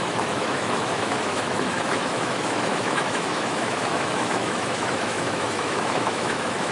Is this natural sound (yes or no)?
no